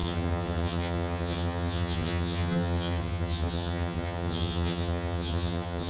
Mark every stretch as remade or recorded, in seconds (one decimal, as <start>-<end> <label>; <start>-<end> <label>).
0.0-5.9 remade